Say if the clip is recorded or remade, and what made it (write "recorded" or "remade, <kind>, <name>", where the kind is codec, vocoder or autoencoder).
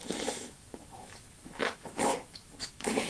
remade, autoencoder, DAC-VAE